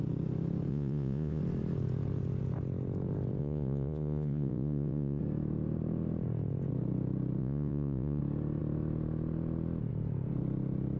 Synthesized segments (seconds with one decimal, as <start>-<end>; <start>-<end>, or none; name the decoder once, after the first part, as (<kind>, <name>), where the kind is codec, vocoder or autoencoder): 0.7-1.4 (vocoder, Vocos); 3.4-5.2; 7.4-8.2

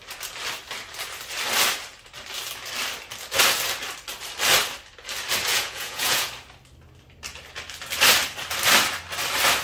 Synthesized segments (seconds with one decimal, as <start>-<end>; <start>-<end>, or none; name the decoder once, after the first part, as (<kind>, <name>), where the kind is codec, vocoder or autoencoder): 5.5-6.3 (vocoder, Vocos)

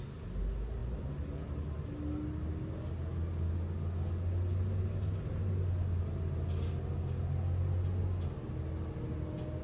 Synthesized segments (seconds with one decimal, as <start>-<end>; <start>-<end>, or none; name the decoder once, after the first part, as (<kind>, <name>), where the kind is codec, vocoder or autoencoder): none

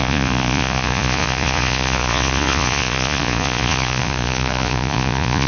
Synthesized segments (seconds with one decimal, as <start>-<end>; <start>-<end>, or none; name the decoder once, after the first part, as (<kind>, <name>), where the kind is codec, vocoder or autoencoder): 0.0-5.5 (vocoder, Vocos)

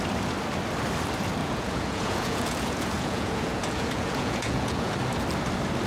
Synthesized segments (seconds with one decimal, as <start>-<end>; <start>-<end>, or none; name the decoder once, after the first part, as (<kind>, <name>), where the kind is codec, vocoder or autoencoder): 1.4-4.9 (vocoder, Vocos)

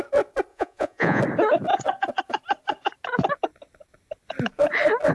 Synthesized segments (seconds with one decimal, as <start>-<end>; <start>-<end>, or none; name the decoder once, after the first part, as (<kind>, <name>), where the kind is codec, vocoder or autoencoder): 0.5-1.2 (vocoder, Vocos)

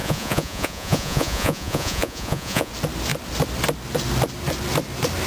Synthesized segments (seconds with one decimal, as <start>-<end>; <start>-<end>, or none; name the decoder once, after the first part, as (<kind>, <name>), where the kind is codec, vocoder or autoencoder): 0.0-2.7 (vocoder, Vocos)